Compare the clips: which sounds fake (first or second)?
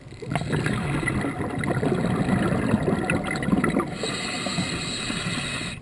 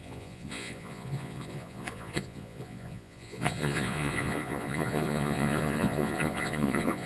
second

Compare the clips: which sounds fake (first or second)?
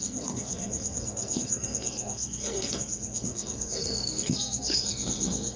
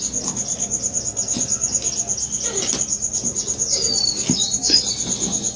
first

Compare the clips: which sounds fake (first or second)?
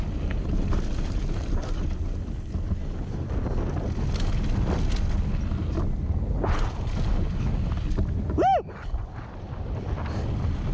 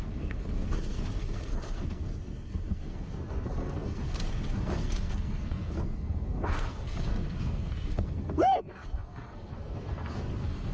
second